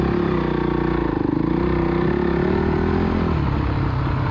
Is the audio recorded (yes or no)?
yes